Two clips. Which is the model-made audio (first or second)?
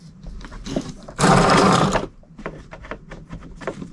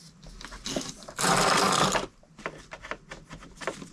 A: first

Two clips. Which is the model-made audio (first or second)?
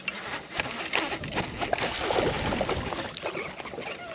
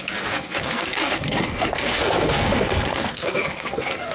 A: second